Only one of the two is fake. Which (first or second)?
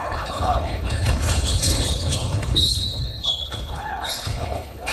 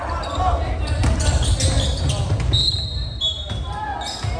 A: first